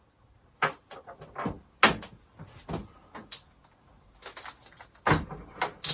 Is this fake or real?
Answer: real